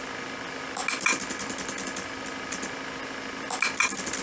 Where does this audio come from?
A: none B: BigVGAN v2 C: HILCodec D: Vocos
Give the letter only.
A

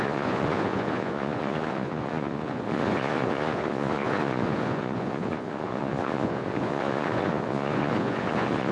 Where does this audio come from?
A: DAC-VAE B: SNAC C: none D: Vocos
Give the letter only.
D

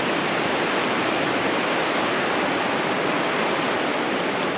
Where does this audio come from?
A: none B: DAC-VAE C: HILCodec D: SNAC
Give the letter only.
A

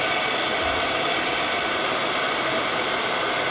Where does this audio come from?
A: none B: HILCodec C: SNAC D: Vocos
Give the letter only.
A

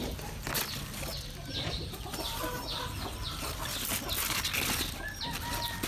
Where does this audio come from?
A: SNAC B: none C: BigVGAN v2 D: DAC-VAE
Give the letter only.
B